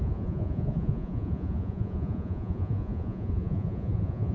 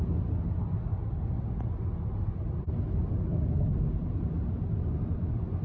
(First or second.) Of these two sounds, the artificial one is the first